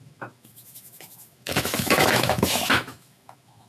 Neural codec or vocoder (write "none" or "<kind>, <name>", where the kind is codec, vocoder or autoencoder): autoencoder, DAC-VAE